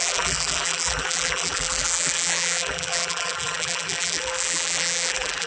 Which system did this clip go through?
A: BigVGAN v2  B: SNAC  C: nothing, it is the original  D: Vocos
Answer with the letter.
A